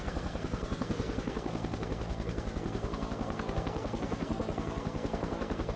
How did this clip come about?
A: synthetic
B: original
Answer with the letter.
A